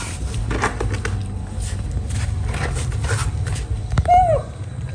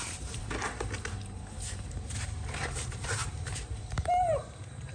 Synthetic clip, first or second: second